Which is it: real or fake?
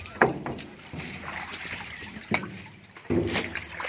fake